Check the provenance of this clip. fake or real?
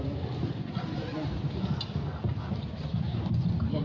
real